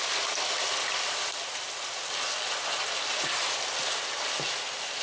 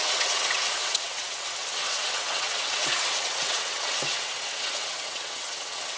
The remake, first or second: second